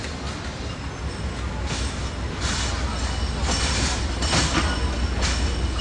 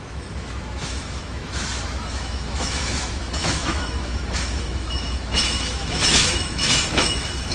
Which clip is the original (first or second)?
first